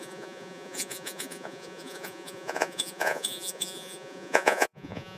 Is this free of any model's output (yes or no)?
no